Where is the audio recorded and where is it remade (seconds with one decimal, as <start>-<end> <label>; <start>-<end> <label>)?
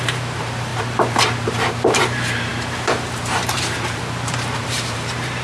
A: 0.0-5.4 remade